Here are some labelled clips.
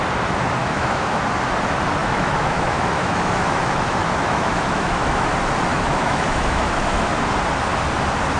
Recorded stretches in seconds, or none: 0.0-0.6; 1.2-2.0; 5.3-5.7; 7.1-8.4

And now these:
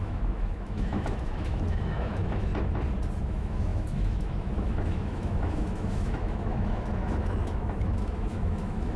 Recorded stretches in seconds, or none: 2.5-3.2

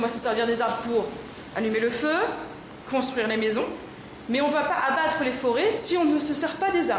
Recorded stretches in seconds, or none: 0.0-7.0

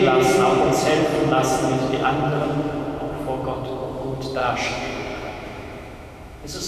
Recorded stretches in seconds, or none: 0.0-4.4

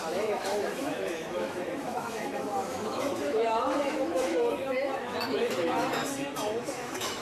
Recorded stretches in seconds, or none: 6.0-6.6

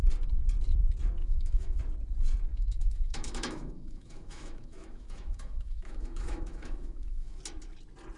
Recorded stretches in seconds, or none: 0.0-1.2; 1.8-2.5; 7.4-8.2

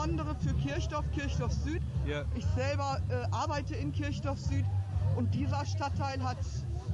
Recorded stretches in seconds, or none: 0.0-6.1